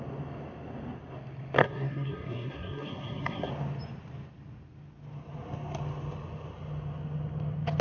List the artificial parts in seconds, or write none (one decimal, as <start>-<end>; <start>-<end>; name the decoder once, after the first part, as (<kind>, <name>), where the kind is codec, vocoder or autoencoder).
1.6-3.5 (codec, SNAC)